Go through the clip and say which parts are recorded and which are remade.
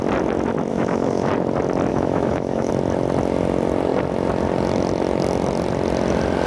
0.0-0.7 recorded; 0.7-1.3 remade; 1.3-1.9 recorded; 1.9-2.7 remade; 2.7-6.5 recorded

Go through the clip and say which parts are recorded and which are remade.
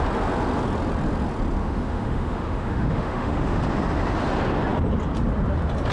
0.0-1.6 recorded; 1.6-3.6 remade; 3.6-5.9 recorded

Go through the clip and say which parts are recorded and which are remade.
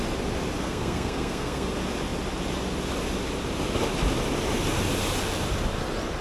0.0-0.6 recorded; 0.6-1.7 remade; 1.7-6.2 recorded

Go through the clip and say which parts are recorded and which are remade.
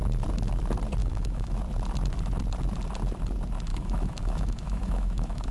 0.0-1.0 recorded; 1.0-1.6 remade; 1.6-3.7 recorded; 3.7-5.5 remade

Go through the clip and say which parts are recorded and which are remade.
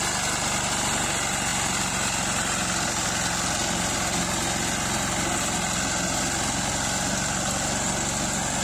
0.0-8.6 recorded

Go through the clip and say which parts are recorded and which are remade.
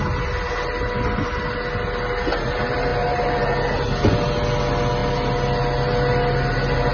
0.0-6.9 recorded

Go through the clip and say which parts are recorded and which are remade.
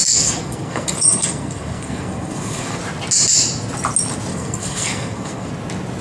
0.0-2.8 remade; 2.8-4.3 recorded; 4.3-5.5 remade; 5.5-6.0 recorded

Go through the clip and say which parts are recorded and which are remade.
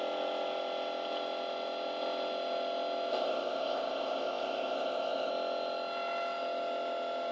0.0-3.1 recorded; 3.1-5.3 remade; 5.3-7.3 recorded